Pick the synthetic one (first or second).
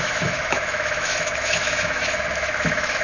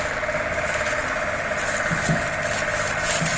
first